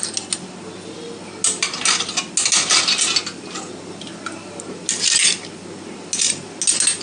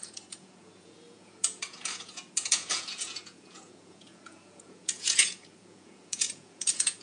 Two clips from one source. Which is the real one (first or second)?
first